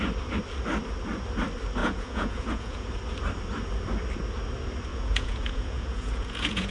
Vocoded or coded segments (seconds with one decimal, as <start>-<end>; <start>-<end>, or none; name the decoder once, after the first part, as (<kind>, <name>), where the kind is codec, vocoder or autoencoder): 1.8-2.9 (vocoder, Vocos); 4.9-6.7